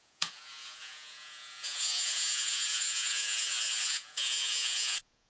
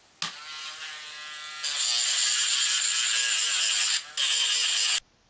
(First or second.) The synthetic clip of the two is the first